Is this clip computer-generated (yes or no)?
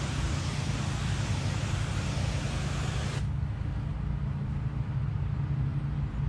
no